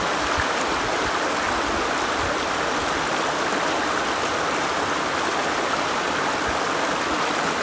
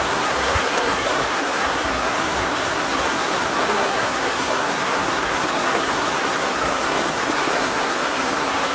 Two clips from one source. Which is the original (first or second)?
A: first